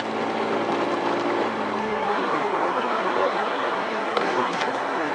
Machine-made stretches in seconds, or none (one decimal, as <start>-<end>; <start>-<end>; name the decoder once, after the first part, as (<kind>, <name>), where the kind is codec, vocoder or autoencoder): 1.8-5.1 (codec, SNAC)